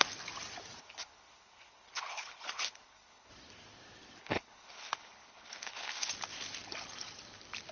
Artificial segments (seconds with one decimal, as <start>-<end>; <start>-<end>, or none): 0.8-3.3; 4.2-6.1

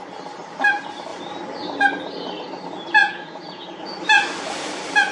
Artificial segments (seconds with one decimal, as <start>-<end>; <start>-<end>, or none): 3.0-3.8